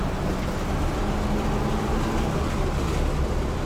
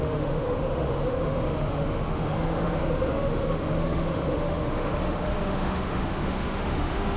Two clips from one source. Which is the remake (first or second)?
second